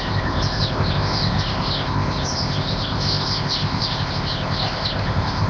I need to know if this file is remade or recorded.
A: remade